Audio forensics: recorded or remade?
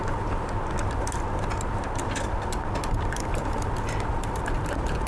recorded